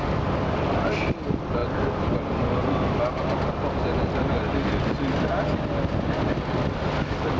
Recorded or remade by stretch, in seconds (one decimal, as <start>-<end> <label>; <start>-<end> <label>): 0.0-7.4 recorded